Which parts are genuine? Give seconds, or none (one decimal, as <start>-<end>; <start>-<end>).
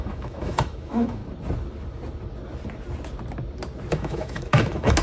1.2-3.9